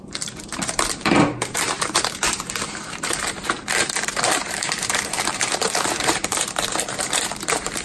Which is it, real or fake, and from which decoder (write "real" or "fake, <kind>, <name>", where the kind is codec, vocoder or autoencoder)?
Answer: fake, vocoder, BigVGAN v2